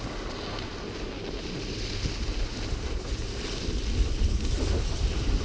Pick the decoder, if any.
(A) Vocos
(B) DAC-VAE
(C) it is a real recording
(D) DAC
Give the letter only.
C